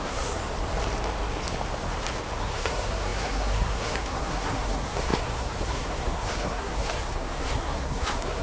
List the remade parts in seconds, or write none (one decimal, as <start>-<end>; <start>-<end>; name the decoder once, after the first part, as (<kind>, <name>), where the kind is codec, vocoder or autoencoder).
0.0-0.4 (codec, SNAC); 2.4-8.4